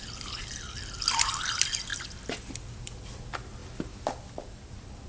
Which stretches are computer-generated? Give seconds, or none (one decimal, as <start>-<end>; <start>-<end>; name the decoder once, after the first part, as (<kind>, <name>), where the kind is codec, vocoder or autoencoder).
none